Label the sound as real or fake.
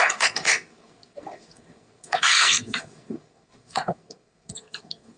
fake